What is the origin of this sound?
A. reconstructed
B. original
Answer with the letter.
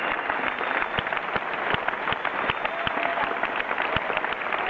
B